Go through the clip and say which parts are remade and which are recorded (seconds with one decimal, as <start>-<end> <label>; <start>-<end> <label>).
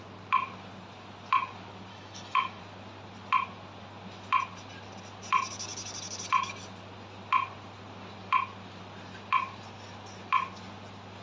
0.0-1.9 recorded; 1.9-2.6 remade; 2.6-11.2 recorded